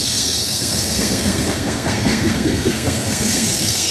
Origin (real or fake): fake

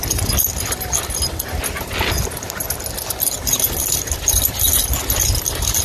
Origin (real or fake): real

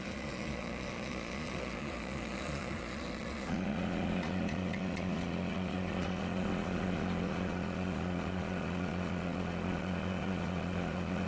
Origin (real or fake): fake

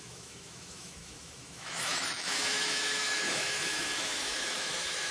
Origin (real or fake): fake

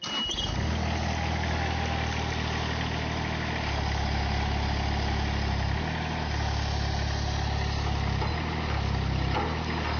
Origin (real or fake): real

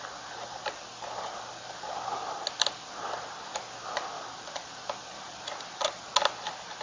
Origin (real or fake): real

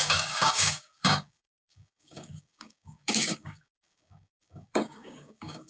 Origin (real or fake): fake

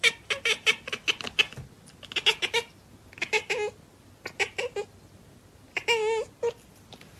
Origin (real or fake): real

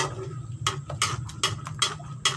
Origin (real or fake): real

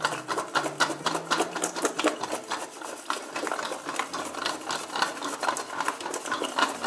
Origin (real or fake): real